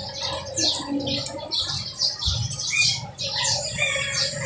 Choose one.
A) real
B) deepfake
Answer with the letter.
A